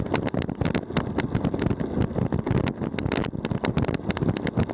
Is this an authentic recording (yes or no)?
yes